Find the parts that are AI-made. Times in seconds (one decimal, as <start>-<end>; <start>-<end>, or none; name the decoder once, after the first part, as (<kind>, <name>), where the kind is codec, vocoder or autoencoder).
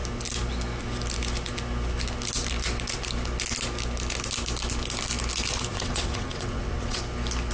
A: 5.7-7.0 (vocoder, WaveNeXt)